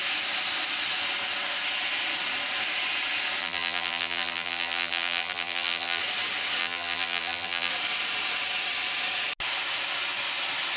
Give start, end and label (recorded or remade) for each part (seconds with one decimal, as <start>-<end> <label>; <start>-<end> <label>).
0.0-3.4 recorded; 3.4-6.0 remade; 6.0-6.6 recorded; 6.6-7.7 remade; 7.7-10.8 recorded